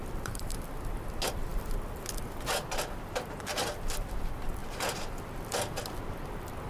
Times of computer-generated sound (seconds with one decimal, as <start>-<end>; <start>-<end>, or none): 0.0-0.8

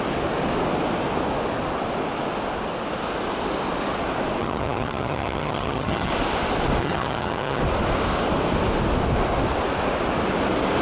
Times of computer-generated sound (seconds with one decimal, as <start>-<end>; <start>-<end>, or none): 4.4-6.1; 6.8-7.6